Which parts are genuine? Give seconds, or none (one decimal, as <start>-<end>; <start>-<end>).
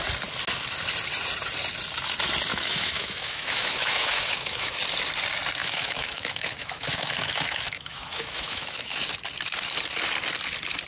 0.0-2.5; 4.8-5.6; 9.0-10.9